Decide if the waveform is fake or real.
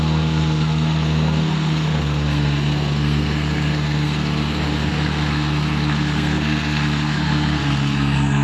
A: fake